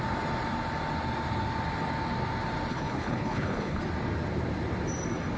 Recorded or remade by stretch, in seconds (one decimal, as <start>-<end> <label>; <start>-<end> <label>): 0.0-2.7 recorded; 2.7-3.8 remade; 3.8-5.4 recorded